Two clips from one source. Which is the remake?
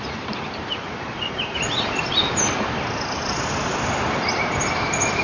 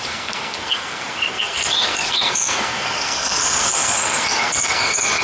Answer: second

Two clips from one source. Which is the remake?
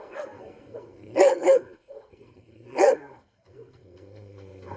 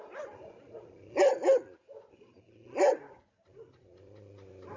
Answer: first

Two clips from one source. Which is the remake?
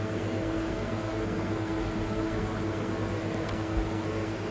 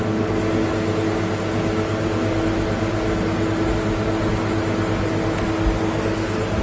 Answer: first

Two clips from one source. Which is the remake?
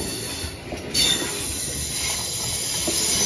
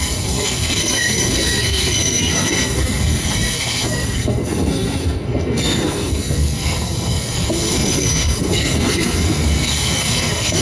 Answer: second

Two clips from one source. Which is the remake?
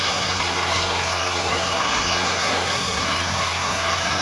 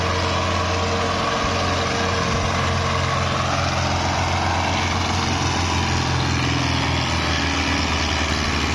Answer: first